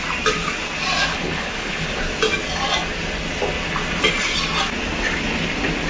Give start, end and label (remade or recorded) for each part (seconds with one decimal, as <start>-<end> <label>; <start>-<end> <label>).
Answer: 0.0-1.1 recorded; 1.1-2.0 remade; 2.0-5.9 recorded